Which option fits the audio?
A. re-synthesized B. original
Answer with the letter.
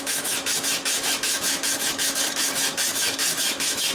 A